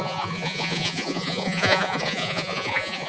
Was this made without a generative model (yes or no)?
no